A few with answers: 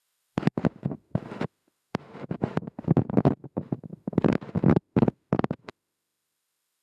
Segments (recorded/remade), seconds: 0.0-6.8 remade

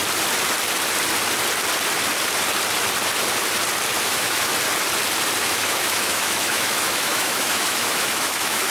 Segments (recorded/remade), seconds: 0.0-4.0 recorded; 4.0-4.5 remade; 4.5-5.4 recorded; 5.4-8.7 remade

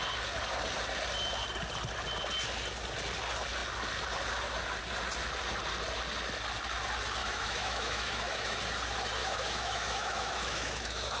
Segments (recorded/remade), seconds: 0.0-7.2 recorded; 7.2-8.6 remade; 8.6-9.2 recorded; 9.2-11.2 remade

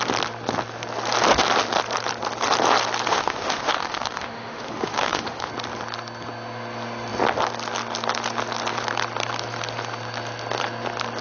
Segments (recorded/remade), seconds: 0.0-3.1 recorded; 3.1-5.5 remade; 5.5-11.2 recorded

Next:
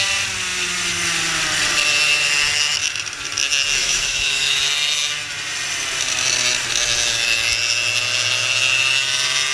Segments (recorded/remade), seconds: 0.0-3.8 recorded; 3.8-4.6 remade; 4.6-9.5 recorded